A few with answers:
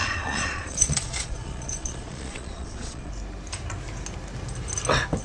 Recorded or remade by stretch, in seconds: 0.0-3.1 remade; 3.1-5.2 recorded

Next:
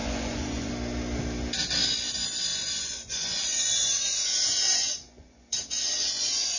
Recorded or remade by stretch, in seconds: 0.0-0.7 remade; 0.7-2.5 recorded; 2.5-6.6 remade